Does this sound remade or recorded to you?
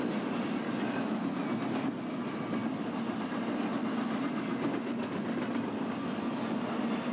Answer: recorded